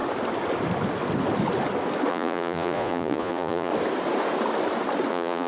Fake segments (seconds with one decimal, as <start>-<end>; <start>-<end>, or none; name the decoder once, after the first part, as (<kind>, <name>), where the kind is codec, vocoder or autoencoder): 2.1-3.7 (vocoder, Vocos); 5.1-5.5